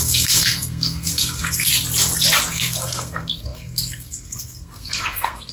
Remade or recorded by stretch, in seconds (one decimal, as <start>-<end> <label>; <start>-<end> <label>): 0.0-1.7 remade; 1.7-2.5 recorded; 2.5-5.5 remade